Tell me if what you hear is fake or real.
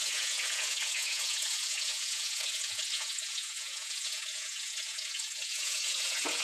fake